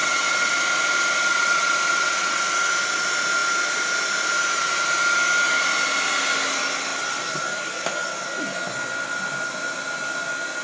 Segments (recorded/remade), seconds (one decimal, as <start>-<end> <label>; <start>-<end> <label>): 0.0-0.5 remade; 0.5-1.3 recorded; 1.3-2.4 remade; 2.4-10.6 recorded